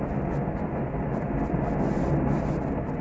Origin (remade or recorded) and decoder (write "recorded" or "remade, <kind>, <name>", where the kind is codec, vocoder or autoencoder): recorded